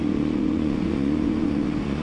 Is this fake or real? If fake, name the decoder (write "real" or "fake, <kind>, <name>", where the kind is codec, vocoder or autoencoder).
fake, vocoder, Vocos